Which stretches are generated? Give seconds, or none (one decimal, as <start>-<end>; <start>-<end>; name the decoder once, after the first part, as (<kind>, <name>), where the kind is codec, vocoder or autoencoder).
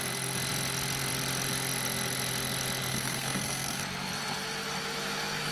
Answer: 2.9-3.8 (codec, SNAC)